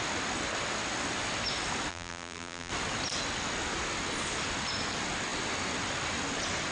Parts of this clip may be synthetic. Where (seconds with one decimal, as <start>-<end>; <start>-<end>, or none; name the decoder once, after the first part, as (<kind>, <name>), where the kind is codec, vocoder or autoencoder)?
1.9-2.7 (vocoder, BigVGAN v2)